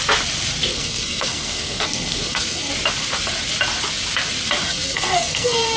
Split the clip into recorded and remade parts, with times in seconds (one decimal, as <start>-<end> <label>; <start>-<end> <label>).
0.0-0.7 recorded; 0.7-2.7 remade; 2.7-4.6 recorded; 4.6-5.8 remade